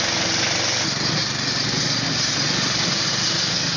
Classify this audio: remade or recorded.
recorded